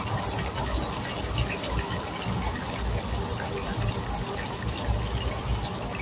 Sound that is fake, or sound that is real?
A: real